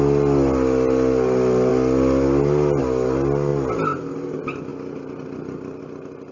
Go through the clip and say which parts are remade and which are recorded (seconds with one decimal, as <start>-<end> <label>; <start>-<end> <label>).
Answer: 0.0-6.3 recorded